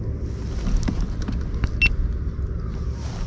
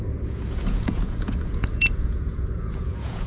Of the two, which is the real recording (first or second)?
first